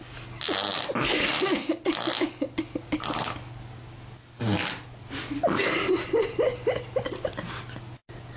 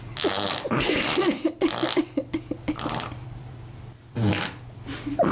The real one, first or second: first